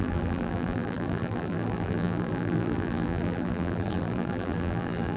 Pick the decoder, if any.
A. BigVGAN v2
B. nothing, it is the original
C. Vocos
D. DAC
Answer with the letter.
A